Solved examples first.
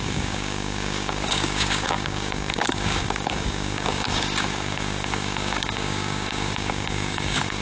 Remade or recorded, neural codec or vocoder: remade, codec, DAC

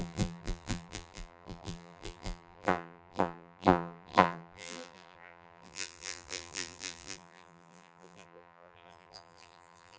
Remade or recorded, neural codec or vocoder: remade, vocoder, BigVGAN v2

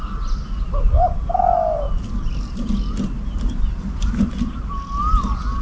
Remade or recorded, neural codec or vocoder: recorded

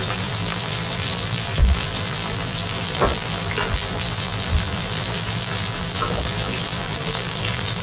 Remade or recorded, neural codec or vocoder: remade, vocoder, BigVGAN v2